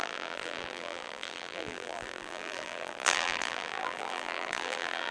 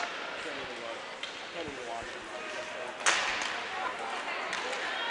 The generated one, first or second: first